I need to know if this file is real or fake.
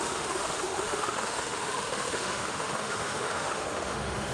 fake